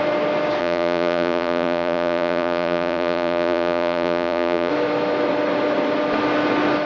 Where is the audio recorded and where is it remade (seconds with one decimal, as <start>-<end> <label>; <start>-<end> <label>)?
0.0-0.6 recorded; 0.6-4.7 remade; 4.7-6.9 recorded